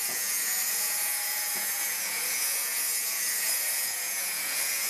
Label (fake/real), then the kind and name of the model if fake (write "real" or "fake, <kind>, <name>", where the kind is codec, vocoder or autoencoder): fake, vocoder, Vocos